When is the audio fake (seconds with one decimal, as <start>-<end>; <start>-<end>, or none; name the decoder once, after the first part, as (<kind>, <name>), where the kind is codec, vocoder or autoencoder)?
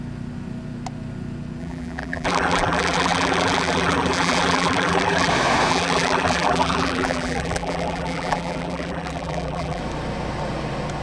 1.6-5.3 (vocoder, BigVGAN v2); 5.7-9.8